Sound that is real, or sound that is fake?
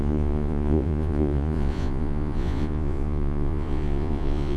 fake